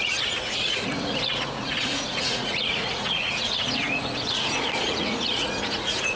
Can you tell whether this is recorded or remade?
remade